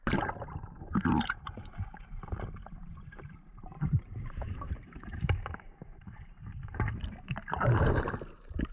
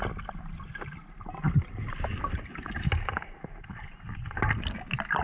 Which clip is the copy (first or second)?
first